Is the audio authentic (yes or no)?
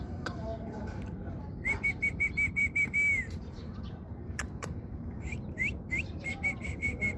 no